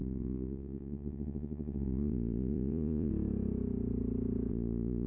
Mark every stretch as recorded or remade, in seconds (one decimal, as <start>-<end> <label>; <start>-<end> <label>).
0.0-3.1 remade; 3.1-4.5 recorded; 4.5-5.1 remade

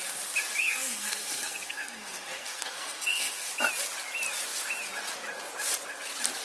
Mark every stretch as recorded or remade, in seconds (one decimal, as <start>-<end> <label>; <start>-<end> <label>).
0.0-0.6 recorded; 0.6-3.5 remade; 3.5-6.4 recorded

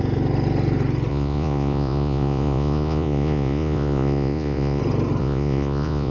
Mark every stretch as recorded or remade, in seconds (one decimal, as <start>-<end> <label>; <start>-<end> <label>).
0.0-1.1 recorded; 1.1-4.8 remade; 4.8-5.2 recorded; 5.2-6.1 remade

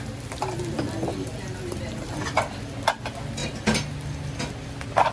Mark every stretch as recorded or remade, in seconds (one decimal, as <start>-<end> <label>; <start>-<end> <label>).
0.0-1.1 recorded; 1.1-2.6 remade; 2.6-5.1 recorded

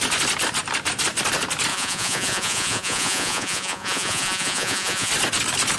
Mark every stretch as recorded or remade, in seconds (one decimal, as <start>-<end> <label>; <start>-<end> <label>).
0.0-1.7 recorded; 1.7-5.1 remade; 5.1-5.8 recorded

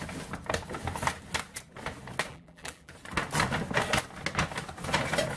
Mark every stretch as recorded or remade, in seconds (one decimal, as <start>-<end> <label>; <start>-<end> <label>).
0.0-2.3 recorded; 2.3-2.9 remade; 2.9-5.4 recorded

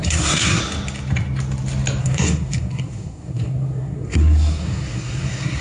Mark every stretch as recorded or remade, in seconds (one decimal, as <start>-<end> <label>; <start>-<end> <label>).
0.0-0.6 remade; 0.6-2.0 recorded; 2.0-5.6 remade